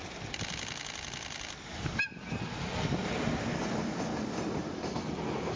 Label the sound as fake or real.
real